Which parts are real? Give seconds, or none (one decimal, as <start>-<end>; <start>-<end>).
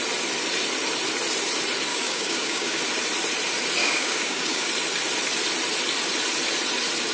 0.0-1.9; 2.8-3.8; 4.7-7.1